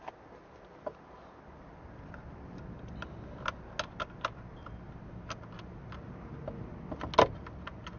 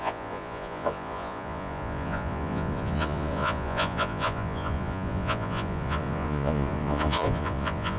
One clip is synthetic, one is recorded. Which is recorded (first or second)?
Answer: first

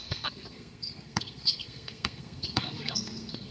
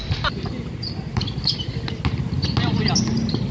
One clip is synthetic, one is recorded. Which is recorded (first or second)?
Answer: second